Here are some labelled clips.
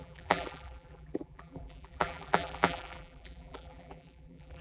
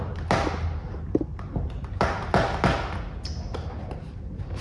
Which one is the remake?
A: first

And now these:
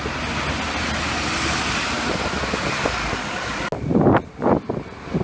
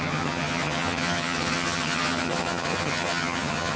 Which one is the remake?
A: second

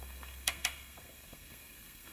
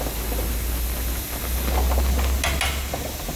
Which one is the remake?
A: first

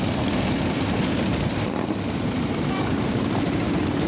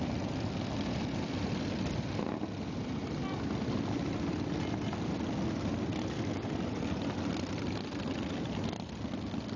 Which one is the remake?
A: first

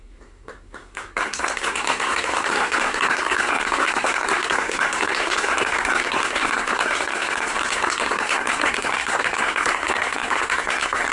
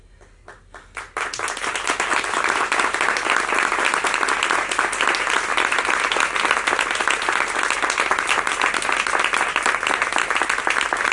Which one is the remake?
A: first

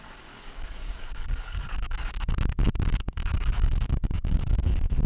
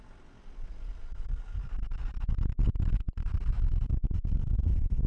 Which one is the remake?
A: first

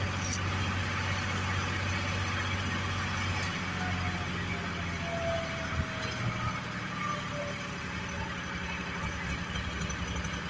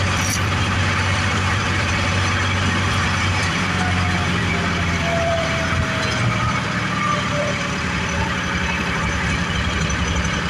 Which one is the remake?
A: second